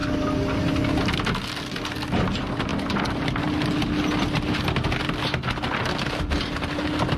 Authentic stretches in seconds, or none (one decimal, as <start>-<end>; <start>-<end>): 0.0-7.2